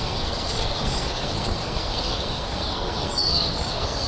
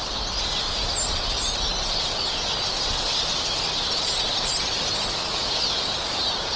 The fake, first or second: first